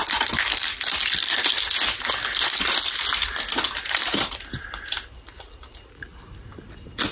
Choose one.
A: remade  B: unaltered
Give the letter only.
B